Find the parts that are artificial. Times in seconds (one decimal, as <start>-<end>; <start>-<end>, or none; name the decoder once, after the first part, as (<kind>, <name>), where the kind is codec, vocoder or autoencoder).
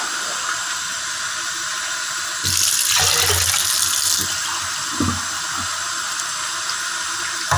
none